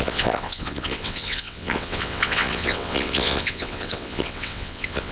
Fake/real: fake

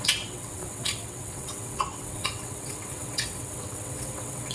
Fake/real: fake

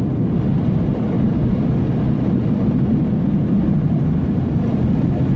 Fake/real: real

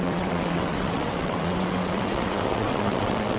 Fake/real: fake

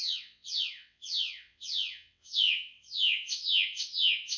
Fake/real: fake